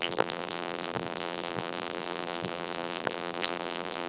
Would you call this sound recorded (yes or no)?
no